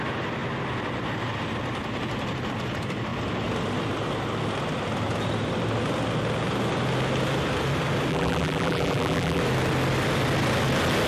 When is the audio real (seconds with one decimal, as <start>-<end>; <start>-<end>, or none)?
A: 0.0-8.1; 9.4-11.1